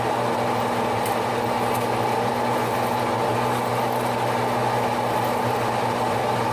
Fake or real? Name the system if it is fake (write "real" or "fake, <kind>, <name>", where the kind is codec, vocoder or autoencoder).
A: real